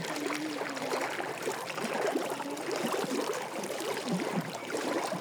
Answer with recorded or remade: remade